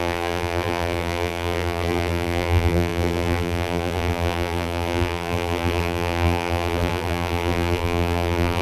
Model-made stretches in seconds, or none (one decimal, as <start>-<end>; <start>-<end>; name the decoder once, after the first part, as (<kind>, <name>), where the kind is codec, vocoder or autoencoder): 0.0-8.6 (vocoder, BigVGAN v2)